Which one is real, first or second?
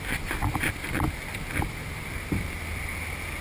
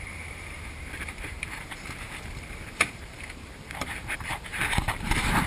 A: first